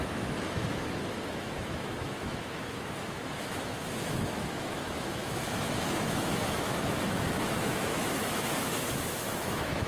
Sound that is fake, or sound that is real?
fake